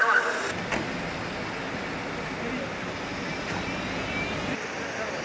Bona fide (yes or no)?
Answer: yes